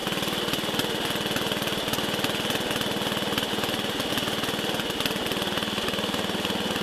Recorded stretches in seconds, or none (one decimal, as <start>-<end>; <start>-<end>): 0.0-6.8